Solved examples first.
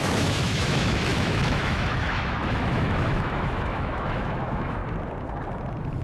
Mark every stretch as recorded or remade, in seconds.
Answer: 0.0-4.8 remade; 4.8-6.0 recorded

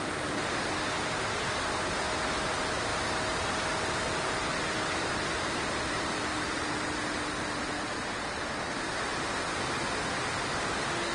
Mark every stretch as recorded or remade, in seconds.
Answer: 0.0-11.1 recorded

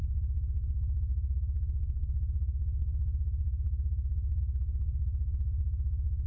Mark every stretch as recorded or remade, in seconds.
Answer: 0.0-6.3 remade

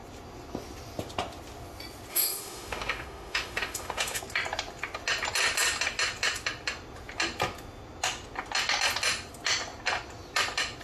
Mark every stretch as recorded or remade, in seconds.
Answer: 0.0-2.1 recorded; 2.1-4.2 remade; 4.2-10.8 recorded

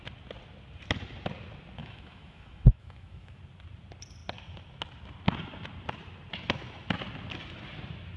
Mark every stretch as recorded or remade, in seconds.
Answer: 0.0-1.8 recorded; 1.8-3.4 remade; 3.4-8.2 recorded

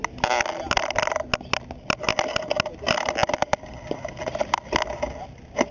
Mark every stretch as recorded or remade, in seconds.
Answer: 0.0-5.7 recorded

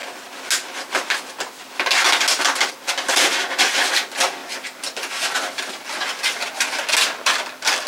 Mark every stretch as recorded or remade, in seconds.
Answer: 0.0-7.9 recorded